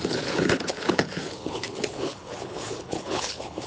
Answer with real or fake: fake